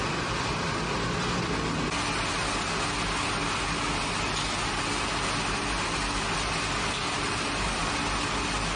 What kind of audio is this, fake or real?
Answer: real